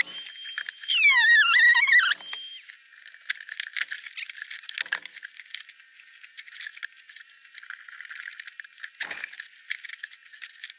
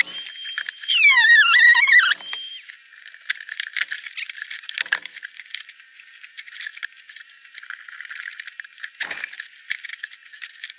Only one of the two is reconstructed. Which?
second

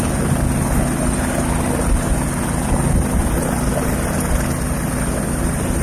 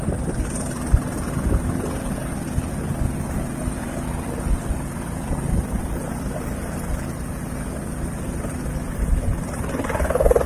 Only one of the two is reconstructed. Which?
second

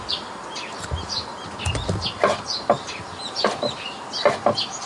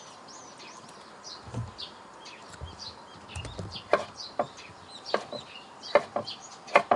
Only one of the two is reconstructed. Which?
second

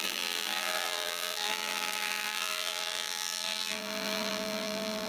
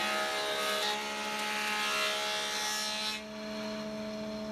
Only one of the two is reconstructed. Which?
first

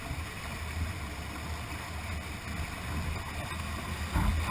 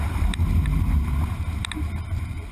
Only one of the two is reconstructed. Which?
second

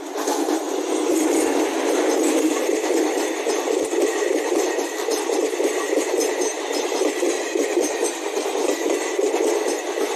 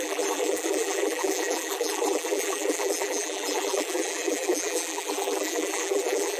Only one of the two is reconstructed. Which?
second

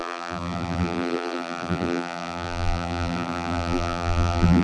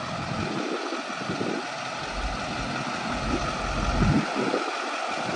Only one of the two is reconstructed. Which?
first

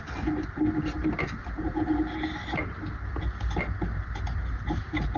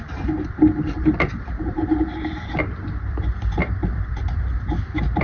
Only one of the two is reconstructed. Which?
second